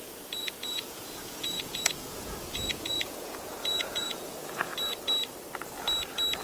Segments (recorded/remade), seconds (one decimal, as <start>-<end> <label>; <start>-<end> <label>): 0.0-4.7 remade; 4.7-6.4 recorded